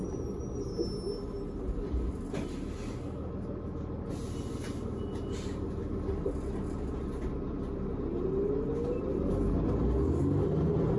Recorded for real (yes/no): yes